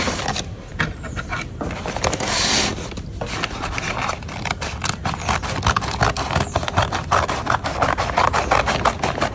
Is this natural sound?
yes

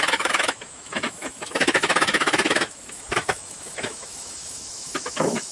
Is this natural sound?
no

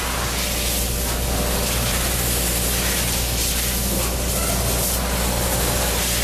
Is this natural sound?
yes